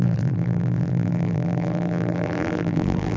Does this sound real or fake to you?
fake